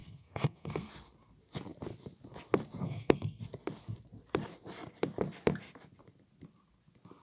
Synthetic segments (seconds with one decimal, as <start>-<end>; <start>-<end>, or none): 0.0-0.9; 2.8-3.4